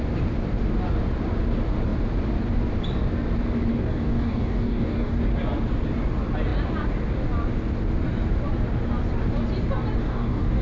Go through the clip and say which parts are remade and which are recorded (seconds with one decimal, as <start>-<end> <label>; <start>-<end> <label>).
0.0-3.7 recorded; 3.7-5.2 remade; 5.2-10.0 recorded; 10.0-10.6 remade